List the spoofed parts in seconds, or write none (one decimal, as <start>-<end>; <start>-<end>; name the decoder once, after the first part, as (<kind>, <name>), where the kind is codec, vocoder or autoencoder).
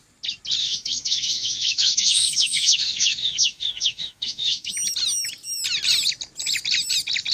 0.6-4.7 (autoencoder, DAC-VAE)